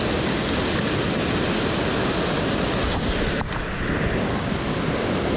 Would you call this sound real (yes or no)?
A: yes